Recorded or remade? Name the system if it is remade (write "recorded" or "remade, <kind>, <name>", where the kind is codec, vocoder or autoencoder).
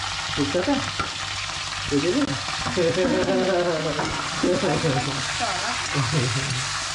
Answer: recorded